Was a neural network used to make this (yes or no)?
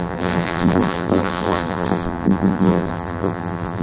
yes